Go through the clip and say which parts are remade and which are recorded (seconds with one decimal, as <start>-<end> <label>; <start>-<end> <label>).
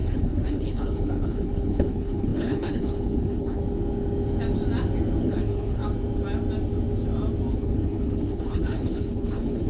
0.0-3.6 remade; 3.6-5.2 recorded; 5.2-5.8 remade; 5.8-7.5 recorded; 7.5-9.7 remade